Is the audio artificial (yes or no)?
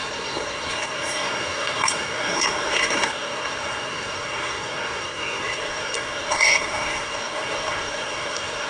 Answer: yes